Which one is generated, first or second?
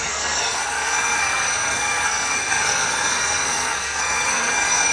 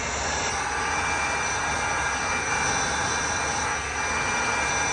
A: first